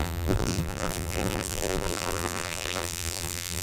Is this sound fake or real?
fake